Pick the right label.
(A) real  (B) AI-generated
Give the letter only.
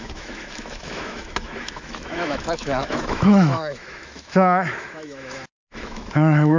B